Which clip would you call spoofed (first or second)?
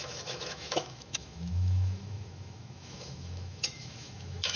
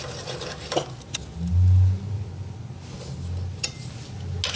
first